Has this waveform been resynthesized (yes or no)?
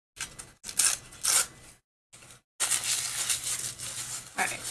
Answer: no